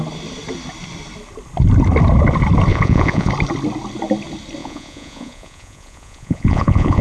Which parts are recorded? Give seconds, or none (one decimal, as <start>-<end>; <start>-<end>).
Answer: 0.0-2.7; 3.3-4.6